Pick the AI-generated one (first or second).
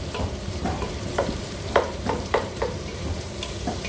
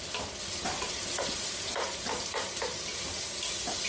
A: first